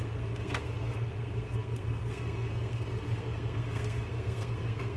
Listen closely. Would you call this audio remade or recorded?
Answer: remade